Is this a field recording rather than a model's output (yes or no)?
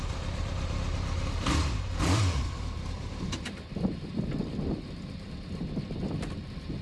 no